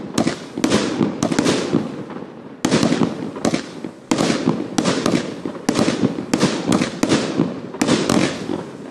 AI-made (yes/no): no